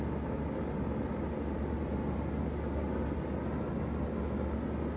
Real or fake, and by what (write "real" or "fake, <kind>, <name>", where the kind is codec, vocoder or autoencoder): real